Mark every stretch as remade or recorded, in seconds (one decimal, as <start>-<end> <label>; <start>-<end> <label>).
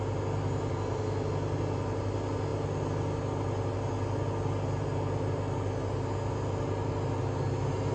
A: 0.0-7.9 recorded